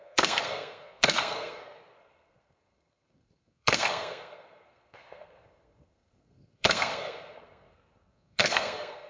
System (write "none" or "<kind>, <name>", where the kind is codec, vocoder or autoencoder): codec, SNAC